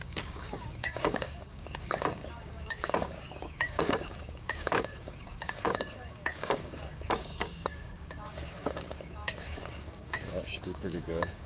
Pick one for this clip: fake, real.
fake